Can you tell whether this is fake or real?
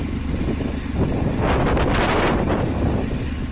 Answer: real